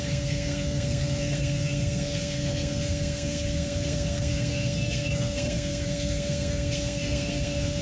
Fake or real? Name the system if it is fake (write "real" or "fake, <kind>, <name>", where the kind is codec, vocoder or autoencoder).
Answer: fake, codec, SNAC